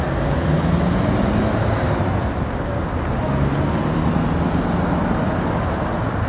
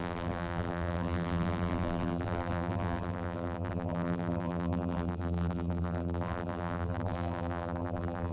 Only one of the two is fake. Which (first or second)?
second